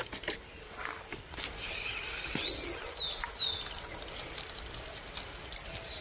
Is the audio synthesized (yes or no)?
no